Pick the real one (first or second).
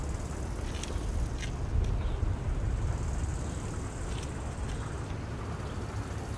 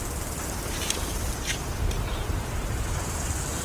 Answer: first